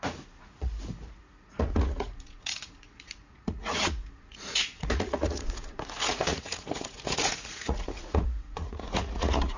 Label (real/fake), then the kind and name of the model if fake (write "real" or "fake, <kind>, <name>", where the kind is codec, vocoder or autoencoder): fake, vocoder, Vocos